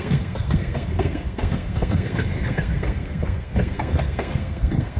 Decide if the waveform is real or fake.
fake